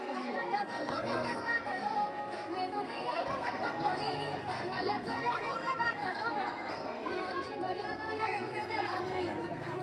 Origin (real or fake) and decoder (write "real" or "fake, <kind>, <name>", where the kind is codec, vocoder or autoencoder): fake, codec, SNAC